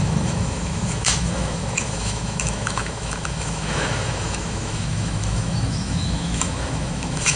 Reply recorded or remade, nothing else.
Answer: remade